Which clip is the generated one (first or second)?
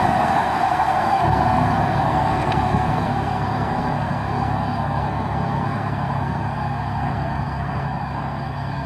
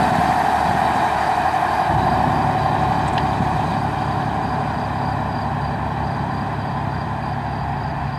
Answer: first